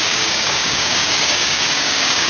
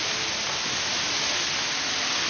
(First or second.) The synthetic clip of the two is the first